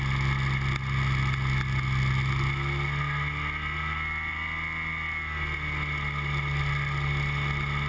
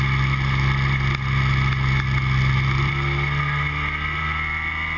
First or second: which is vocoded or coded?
second